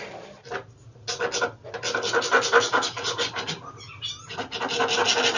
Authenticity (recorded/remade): recorded